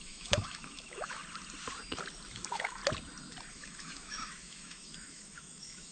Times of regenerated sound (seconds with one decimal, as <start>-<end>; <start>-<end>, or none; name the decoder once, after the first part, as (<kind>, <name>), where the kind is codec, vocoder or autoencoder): 0.0-1.2 (autoencoder, DAC-VAE); 2.3-2.8; 3.5-5.9